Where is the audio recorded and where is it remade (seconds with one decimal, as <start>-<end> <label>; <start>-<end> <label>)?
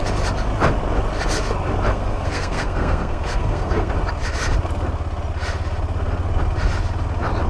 0.0-1.9 recorded; 1.9-3.9 remade; 3.9-7.5 recorded